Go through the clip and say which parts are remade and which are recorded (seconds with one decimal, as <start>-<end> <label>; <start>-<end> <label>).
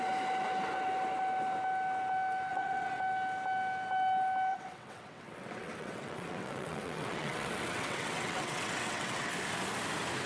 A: 0.0-2.5 recorded; 2.5-3.0 remade; 3.0-4.5 recorded; 4.5-9.3 remade; 9.3-10.3 recorded